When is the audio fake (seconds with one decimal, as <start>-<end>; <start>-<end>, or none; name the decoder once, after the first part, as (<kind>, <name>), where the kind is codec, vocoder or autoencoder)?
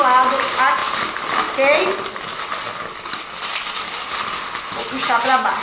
none